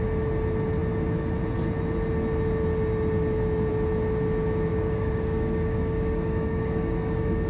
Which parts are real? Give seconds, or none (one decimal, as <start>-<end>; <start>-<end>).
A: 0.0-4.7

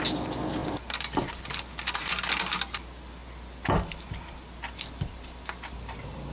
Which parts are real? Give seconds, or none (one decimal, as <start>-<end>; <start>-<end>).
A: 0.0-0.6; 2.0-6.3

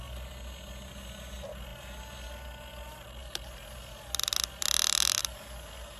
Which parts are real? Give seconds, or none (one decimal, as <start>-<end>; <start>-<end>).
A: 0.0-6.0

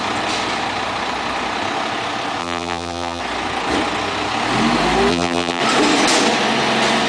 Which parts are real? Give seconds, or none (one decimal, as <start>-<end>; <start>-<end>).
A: 0.0-2.4; 3.2-5.1; 5.6-7.1

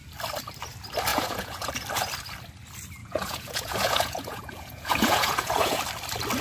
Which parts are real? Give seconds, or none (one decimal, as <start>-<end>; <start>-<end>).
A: 0.0-1.1; 1.7-3.0; 5.8-6.4

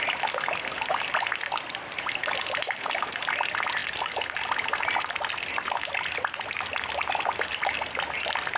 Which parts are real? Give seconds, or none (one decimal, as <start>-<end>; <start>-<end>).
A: 0.0-8.6